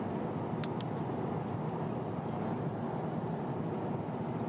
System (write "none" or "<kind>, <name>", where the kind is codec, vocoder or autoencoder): none